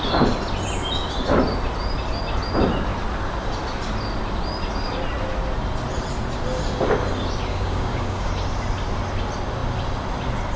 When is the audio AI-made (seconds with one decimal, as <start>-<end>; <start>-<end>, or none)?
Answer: 7.5-8.3